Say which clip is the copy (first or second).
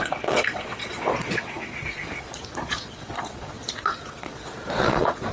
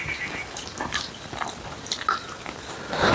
first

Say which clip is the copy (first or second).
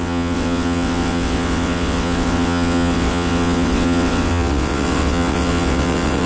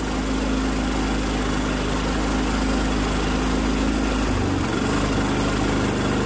first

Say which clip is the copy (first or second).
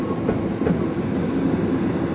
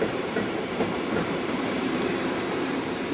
second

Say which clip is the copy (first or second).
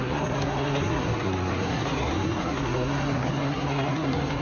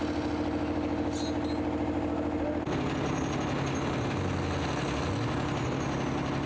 first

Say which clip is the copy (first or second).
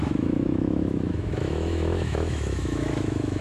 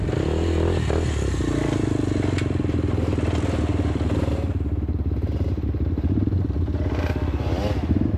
first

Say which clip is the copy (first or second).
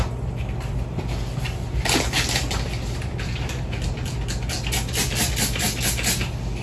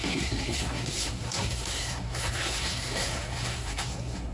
second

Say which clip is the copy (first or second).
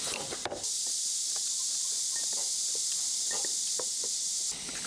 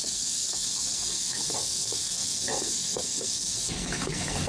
second